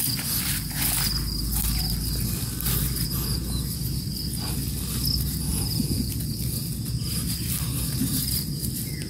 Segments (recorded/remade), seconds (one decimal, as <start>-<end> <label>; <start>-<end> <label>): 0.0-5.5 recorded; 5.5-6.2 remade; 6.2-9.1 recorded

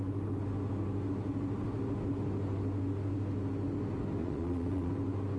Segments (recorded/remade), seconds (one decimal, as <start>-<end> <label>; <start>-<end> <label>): 0.0-4.2 recorded; 4.2-4.9 remade; 4.9-5.4 recorded

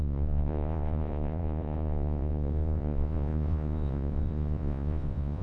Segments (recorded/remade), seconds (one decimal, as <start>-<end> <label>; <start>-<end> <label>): 0.0-5.4 remade

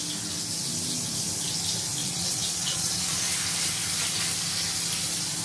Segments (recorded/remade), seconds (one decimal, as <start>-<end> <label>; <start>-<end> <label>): 0.0-2.0 recorded; 2.0-3.3 remade; 3.3-5.4 recorded

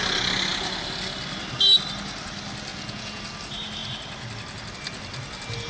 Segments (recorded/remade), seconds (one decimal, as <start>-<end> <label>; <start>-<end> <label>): 0.0-2.7 recorded; 2.7-3.2 remade; 3.2-5.7 recorded

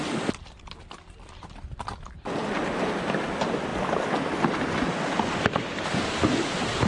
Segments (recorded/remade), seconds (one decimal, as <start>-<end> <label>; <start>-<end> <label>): 0.0-6.9 recorded

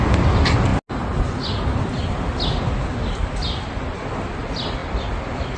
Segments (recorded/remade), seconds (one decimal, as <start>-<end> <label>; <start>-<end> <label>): 0.0-5.6 recorded